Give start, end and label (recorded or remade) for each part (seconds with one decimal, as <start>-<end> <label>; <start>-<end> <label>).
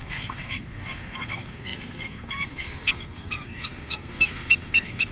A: 0.0-5.1 remade